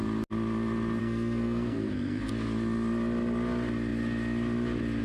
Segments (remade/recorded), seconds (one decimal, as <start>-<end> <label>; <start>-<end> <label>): 0.0-1.0 recorded; 1.0-2.3 remade; 2.3-5.0 recorded